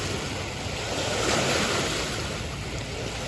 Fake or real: real